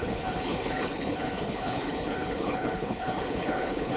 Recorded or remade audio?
remade